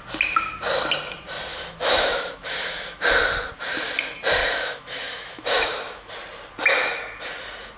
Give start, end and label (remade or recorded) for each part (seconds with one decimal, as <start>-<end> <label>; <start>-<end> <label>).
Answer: 0.0-1.5 recorded; 1.5-3.0 remade; 3.0-4.4 recorded; 4.4-6.1 remade; 6.1-7.8 recorded